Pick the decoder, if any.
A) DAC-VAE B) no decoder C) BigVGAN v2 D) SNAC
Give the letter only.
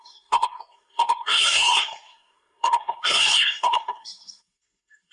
D